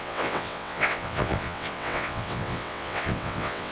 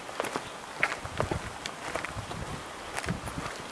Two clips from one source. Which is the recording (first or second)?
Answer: second